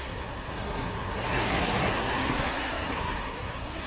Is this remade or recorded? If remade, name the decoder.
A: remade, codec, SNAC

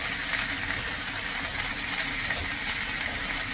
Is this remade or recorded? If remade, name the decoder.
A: recorded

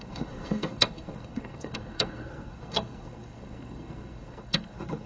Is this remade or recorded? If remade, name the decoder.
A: remade, codec, SNAC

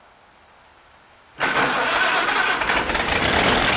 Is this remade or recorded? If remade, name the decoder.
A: remade, vocoder, BigVGAN v2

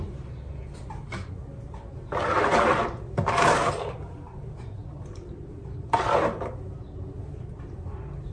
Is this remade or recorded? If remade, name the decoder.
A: recorded